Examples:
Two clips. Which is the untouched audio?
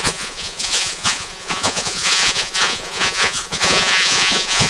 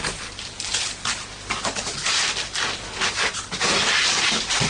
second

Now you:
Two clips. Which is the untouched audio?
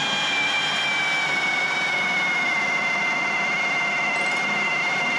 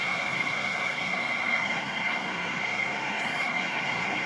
first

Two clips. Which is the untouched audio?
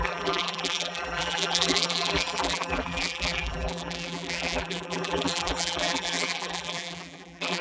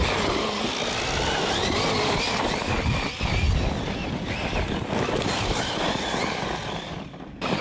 second